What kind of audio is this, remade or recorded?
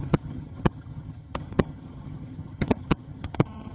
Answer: remade